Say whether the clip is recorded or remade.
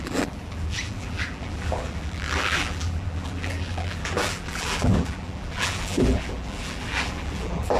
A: remade